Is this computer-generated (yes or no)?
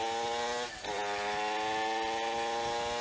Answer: no